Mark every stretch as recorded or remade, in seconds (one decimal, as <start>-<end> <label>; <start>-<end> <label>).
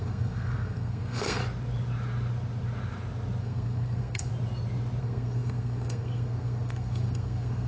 0.0-1.4 remade; 1.4-3.4 recorded; 3.4-4.3 remade; 4.3-5.0 recorded; 5.0-7.7 remade